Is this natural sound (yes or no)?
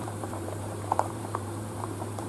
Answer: no